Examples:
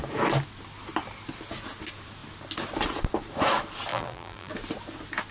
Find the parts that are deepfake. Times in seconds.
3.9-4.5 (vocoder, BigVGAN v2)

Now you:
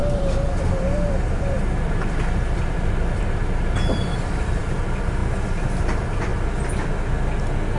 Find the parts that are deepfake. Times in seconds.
0.0-5.2 (vocoder, BigVGAN v2); 5.8-6.3